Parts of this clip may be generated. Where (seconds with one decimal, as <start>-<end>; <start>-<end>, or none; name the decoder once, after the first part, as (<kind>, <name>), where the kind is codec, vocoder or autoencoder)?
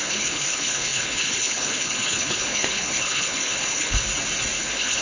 0.0-4.0 (codec, HILCodec); 4.6-5.0